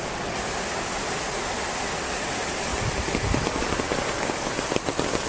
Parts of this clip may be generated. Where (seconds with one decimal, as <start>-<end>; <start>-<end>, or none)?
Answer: none